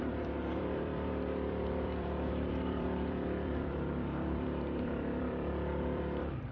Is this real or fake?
fake